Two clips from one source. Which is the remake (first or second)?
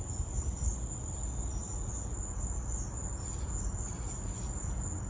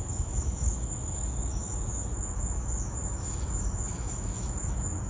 second